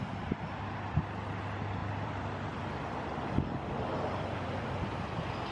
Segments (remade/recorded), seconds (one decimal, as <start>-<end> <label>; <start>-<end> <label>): 0.0-1.8 recorded; 1.8-4.8 remade; 4.8-5.5 recorded